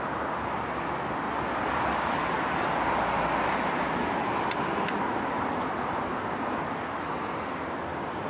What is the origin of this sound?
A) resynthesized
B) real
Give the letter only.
B